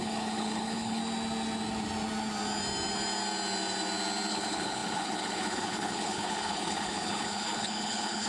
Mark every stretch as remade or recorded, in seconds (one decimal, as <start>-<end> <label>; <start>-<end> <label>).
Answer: 0.0-1.0 remade; 1.0-4.3 recorded; 4.3-8.3 remade